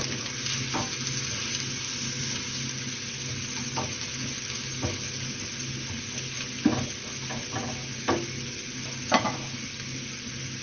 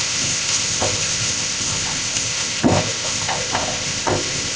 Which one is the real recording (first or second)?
first